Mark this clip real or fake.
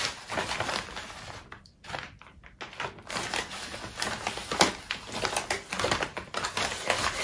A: real